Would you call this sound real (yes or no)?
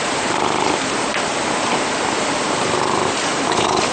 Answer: no